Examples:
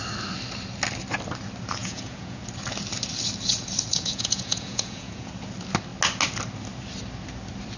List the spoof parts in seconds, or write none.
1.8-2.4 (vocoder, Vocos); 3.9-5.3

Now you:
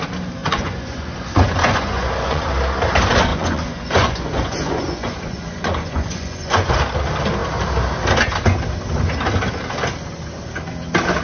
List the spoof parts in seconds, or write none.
0.4-2.5 (vocoder, Vocos); 3.3-6.7

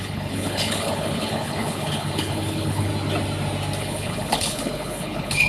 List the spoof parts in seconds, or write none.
0.0-2.9 (codec, HILCodec); 3.8-5.5

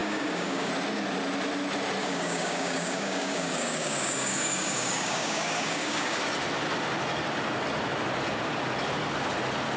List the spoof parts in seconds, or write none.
0.0-0.7 (codec, DAC); 2.0-6.2